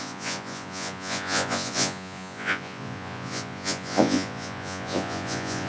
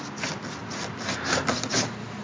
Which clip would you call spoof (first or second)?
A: first